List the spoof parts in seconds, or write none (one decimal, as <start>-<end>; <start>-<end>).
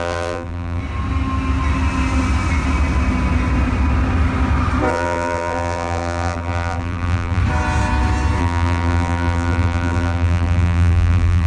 0.0-0.8; 4.9-7.4; 8.4-11.5